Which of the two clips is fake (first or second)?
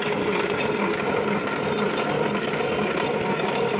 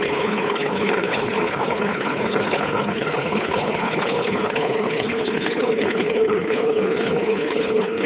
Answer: second